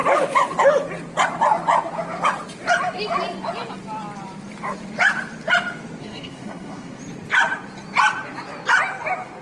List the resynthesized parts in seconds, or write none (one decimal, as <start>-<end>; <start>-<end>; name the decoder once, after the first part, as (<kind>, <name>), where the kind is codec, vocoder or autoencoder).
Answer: 6.0-7.0 (codec, SNAC)